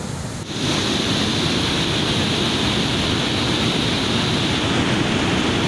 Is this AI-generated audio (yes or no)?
no